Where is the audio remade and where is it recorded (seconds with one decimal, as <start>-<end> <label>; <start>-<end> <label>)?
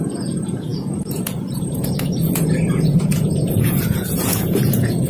0.0-5.1 remade